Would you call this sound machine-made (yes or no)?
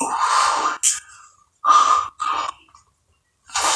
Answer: no